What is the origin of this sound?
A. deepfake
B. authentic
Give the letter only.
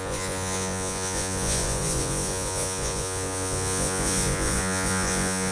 A